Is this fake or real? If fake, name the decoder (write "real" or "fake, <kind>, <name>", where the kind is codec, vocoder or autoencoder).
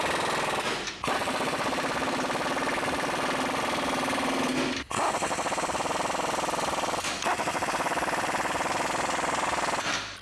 real